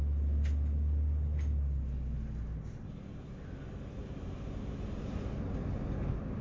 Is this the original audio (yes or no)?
yes